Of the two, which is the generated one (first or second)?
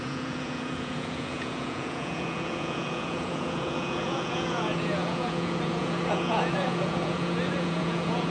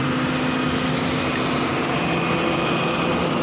first